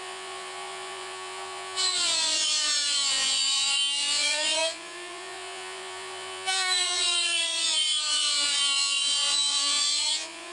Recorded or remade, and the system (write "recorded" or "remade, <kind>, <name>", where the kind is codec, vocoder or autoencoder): remade, vocoder, Vocos